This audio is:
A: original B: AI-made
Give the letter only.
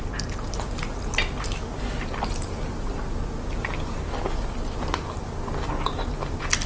A